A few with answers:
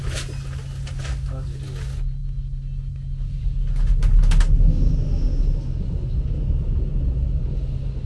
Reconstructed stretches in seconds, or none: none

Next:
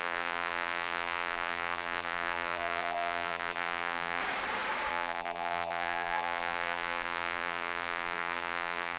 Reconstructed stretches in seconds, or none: 0.0-4.2 (vocoder, BigVGAN v2); 4.9-9.0

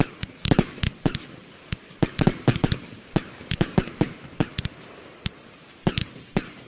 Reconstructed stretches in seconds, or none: 0.0-4.5 (vocoder, BigVGAN v2); 5.1-6.7

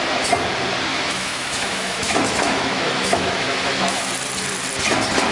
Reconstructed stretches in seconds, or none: 0.9-4.1 (autoencoder, DAC-VAE)

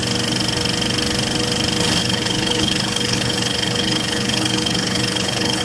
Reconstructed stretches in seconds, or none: 2.0-5.6 (codec, HILCodec)

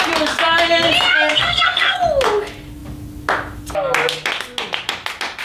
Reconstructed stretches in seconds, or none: 1.3-2.0 (codec, SNAC)

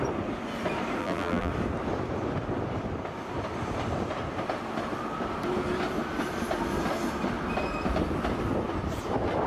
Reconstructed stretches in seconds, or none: 1.0-1.5 (vocoder, BigVGAN v2)